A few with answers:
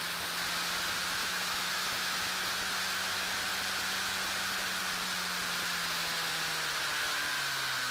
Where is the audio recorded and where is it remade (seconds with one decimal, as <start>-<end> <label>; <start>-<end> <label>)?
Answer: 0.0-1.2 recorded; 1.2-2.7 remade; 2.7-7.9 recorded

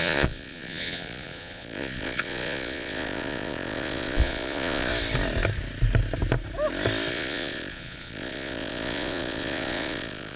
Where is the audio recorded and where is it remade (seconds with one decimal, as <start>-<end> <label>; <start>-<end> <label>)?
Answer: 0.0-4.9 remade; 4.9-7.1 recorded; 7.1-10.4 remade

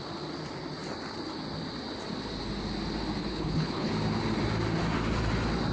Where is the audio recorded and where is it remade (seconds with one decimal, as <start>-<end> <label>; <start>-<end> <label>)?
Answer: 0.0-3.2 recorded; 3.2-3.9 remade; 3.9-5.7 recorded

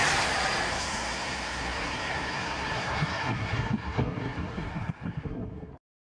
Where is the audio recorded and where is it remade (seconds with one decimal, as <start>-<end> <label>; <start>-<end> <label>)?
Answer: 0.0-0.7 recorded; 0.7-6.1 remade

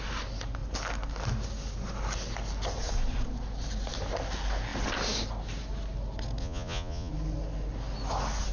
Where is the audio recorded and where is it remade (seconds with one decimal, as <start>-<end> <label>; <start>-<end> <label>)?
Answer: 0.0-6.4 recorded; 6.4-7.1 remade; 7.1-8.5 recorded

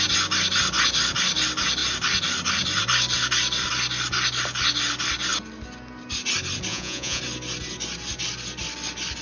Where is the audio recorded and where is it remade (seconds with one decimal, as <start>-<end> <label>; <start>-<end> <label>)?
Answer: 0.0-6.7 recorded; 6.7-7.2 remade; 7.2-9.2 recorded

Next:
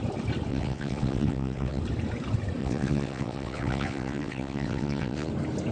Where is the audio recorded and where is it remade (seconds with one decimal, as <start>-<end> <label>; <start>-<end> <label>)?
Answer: 0.0-0.5 recorded; 0.5-1.8 remade; 1.8-2.6 recorded; 2.6-5.3 remade; 5.3-5.7 recorded